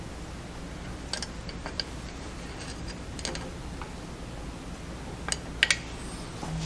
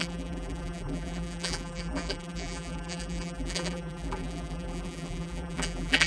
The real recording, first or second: first